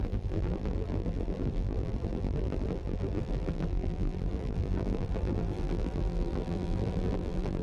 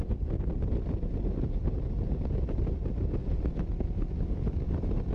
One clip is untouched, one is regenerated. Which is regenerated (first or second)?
first